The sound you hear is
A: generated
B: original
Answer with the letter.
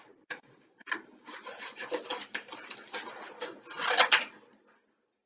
B